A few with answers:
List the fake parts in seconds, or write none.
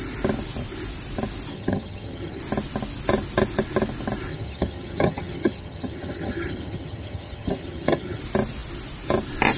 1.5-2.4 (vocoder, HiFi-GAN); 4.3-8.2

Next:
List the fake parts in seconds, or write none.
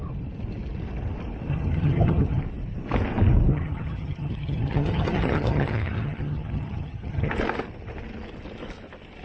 1.5-2.4 (vocoder, HiFi-GAN); 3.5-7.3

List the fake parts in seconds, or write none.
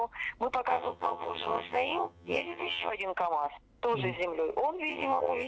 0.7-2.9 (vocoder, HiFi-GAN); 4.9-5.5